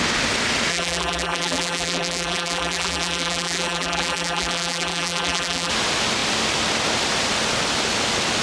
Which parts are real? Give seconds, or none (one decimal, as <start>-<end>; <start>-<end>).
0.0-0.7; 5.7-8.4